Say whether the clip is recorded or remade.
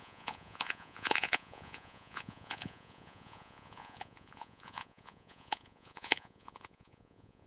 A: remade